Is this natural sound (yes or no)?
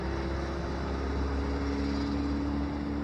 yes